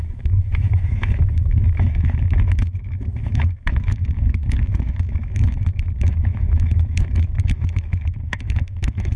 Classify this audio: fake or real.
fake